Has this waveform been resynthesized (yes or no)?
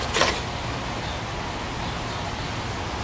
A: no